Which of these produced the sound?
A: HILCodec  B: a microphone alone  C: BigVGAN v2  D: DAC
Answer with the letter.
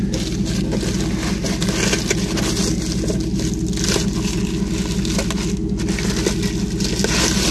B